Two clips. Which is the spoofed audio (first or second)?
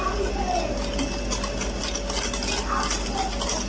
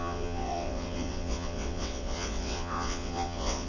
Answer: second